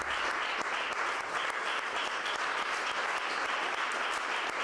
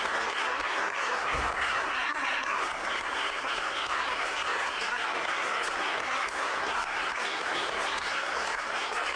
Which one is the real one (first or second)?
first